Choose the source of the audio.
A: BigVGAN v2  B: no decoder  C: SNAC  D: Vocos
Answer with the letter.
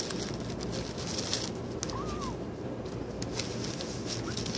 B